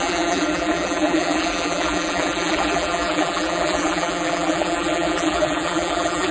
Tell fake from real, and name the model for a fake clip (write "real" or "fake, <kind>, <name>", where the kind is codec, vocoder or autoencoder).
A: fake, vocoder, BigVGAN v2